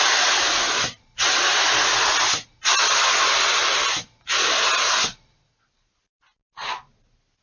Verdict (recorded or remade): recorded